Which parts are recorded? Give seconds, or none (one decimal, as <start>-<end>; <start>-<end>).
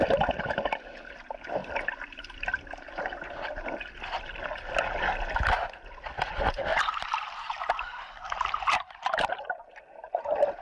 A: 0.0-6.7; 9.6-10.6